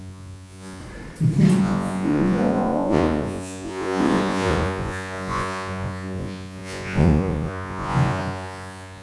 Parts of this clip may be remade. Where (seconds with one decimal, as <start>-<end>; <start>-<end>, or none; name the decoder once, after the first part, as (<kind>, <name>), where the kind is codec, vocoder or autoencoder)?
0.0-0.8 (vocoder, Vocos); 1.6-9.0